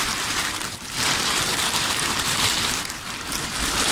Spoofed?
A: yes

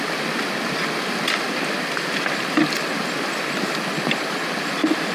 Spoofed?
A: no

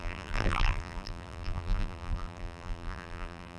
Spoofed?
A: yes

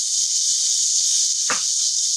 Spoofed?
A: no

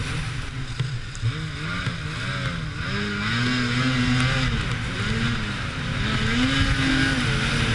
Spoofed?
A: no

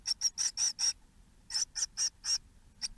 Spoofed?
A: no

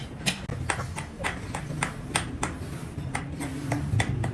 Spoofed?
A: no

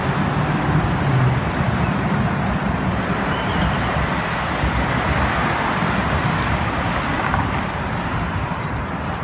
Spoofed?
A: no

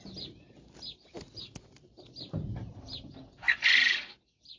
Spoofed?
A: no